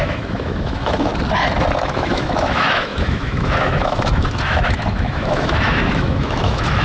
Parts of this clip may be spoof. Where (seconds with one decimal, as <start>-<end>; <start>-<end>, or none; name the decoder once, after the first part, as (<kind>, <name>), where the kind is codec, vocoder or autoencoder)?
0.0-1.1 (autoencoder, DAC-VAE); 1.8-6.8